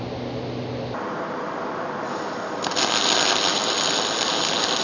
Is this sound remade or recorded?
recorded